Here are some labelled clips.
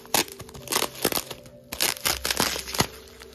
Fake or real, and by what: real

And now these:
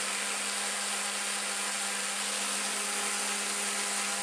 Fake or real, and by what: real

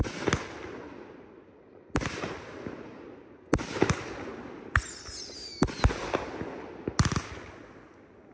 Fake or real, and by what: real